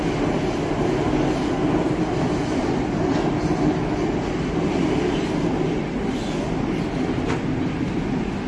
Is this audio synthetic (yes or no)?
no